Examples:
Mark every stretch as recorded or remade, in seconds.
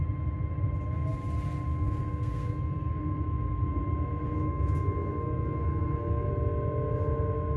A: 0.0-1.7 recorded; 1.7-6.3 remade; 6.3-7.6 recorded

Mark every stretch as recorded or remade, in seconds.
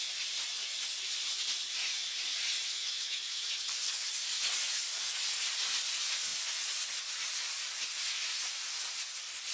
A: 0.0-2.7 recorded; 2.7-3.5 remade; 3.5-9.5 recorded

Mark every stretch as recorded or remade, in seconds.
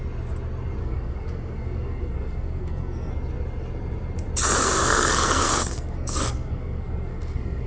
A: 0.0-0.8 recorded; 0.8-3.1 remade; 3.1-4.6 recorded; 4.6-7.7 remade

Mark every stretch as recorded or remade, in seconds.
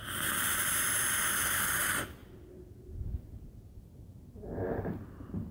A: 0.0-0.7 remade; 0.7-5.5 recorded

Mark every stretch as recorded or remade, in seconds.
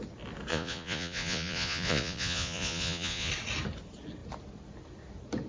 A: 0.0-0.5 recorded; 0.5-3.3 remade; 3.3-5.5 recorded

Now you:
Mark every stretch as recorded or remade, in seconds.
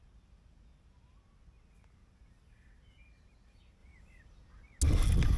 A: 0.0-5.4 recorded